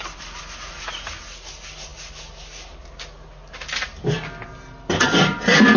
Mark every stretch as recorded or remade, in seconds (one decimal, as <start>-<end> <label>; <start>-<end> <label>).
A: 0.0-5.8 recorded